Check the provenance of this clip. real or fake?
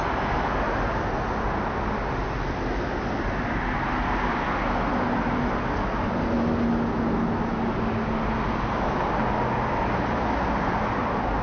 real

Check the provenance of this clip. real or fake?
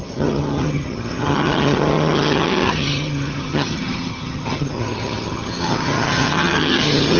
fake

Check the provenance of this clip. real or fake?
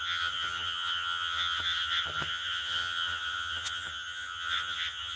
fake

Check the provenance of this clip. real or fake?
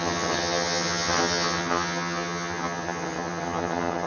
fake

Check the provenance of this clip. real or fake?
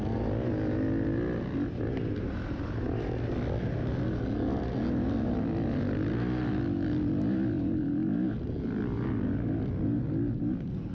real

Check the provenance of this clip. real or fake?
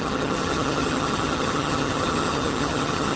fake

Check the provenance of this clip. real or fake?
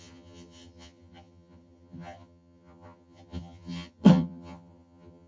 fake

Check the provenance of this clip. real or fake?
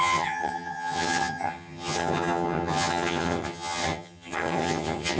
fake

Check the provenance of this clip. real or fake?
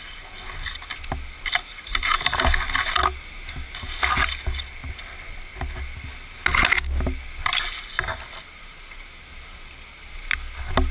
real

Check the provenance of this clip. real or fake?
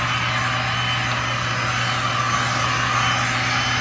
real